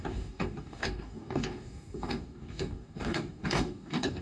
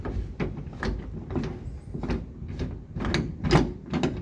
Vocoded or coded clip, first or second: first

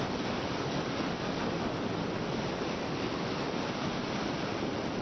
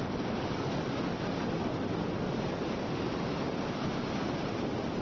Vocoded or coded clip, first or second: first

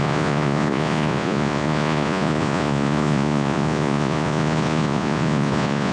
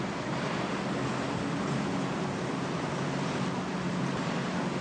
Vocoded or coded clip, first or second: first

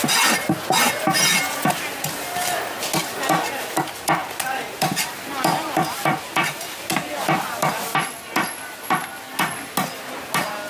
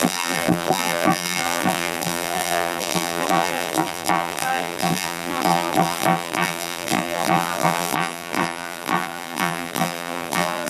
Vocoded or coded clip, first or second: second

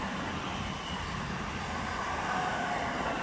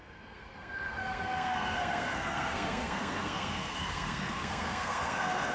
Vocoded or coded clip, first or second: second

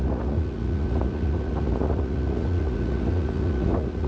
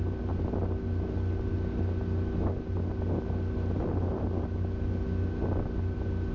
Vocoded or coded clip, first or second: first